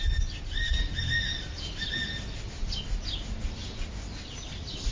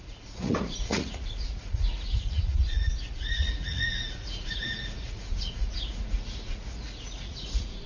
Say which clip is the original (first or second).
first